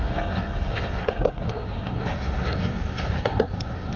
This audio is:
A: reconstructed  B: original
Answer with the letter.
A